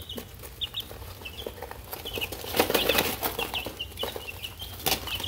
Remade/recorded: recorded